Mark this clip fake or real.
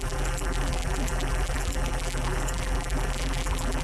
fake